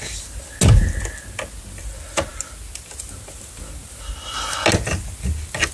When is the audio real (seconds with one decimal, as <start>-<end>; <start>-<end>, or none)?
0.0-5.7